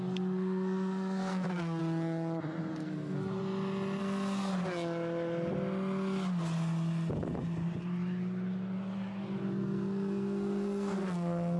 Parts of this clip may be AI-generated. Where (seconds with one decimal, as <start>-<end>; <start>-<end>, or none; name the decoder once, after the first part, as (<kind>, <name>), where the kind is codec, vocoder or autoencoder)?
0.0-1.8 (codec, SNAC); 2.7-3.4; 4.0-4.5; 9.6-11.6